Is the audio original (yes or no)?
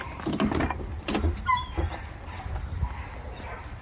yes